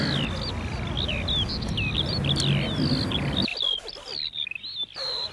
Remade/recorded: recorded